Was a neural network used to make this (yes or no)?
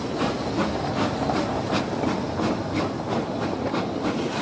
no